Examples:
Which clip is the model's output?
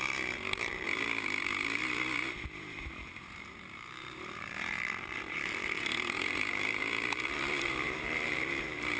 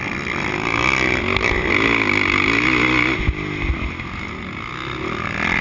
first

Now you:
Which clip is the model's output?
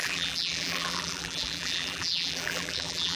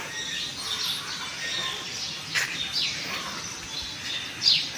first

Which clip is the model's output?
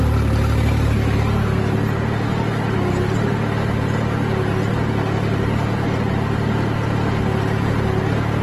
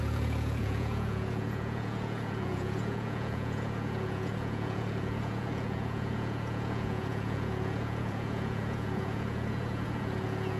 second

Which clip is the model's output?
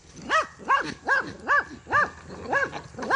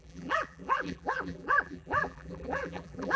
second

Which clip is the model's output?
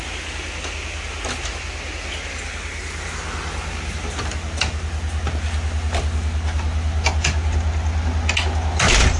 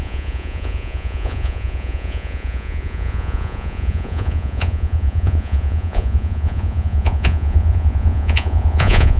second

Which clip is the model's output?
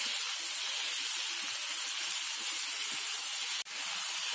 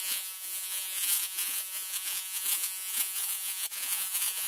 second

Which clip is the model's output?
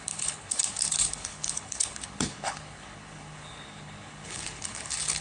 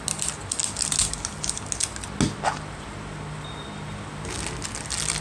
first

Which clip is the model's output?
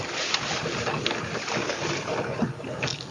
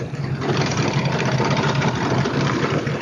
second